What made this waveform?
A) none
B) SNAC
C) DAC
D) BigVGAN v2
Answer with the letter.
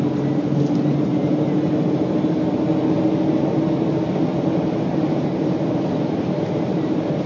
A